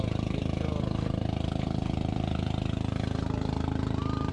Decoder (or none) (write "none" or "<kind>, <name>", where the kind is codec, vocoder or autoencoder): none